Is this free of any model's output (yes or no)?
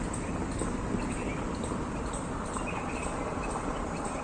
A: yes